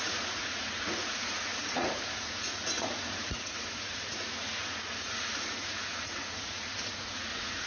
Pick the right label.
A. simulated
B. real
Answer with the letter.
A